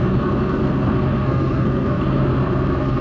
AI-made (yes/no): yes